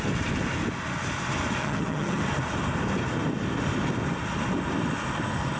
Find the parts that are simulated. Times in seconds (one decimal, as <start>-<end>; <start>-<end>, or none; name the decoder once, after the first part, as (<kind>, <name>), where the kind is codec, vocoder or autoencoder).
1.6-2.2 (vocoder, HiFi-GAN)